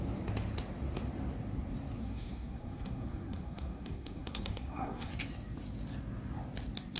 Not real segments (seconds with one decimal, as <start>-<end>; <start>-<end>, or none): 2.0-5.1